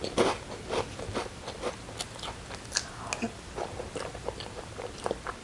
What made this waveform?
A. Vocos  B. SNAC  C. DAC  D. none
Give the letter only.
D